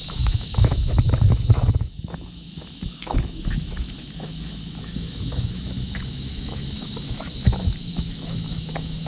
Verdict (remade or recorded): remade